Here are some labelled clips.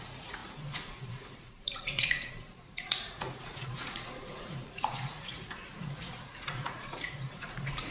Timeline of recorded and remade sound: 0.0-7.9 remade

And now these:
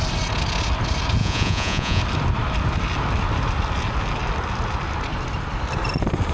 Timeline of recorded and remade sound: 0.0-1.2 recorded; 1.2-2.0 remade; 2.0-6.3 recorded

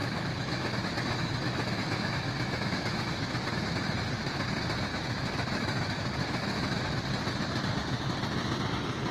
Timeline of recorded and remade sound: 0.0-3.5 remade; 3.5-4.9 recorded; 4.9-6.9 remade; 6.9-9.1 recorded

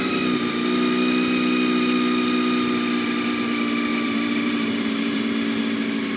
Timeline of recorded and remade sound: 0.0-3.9 recorded; 3.9-5.2 remade; 5.2-6.2 recorded

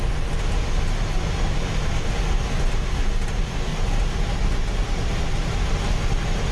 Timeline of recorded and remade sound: 0.0-3.7 recorded; 3.7-4.5 remade; 4.5-6.5 recorded

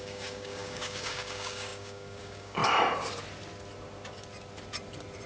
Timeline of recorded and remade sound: 0.0-2.6 remade; 2.6-5.3 recorded

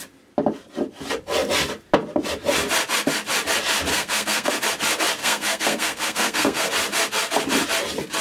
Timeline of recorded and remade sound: 0.0-3.9 recorded; 3.9-4.5 remade; 4.5-5.2 recorded; 5.2-6.7 remade; 6.7-8.2 recorded

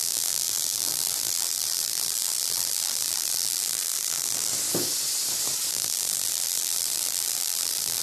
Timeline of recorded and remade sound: 0.0-4.5 remade; 4.5-5.7 recorded; 5.7-8.0 remade